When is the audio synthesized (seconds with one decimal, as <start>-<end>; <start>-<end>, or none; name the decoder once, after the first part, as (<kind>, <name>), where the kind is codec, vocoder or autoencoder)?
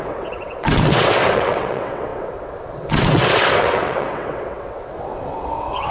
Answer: 0.0-5.9 (vocoder, WaveNeXt)